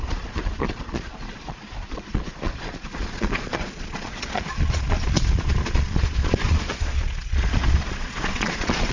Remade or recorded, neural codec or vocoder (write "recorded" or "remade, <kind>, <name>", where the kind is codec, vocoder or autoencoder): remade, vocoder, Vocos